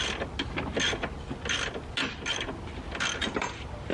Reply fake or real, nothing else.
real